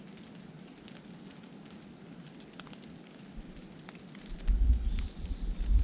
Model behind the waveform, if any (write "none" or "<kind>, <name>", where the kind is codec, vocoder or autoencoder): none